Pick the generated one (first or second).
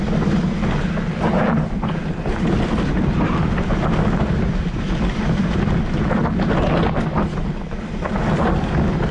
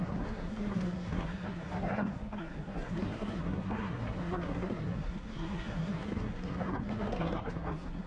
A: second